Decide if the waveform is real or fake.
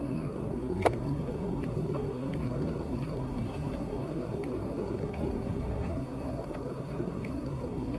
fake